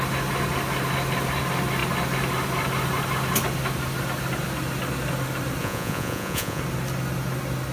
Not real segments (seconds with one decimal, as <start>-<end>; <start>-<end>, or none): 5.6-6.6